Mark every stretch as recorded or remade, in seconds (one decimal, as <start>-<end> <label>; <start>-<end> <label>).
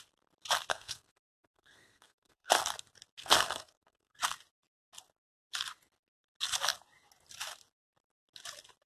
0.0-0.7 recorded; 0.7-2.5 remade; 2.5-3.2 recorded; 3.2-4.2 remade; 4.2-8.9 recorded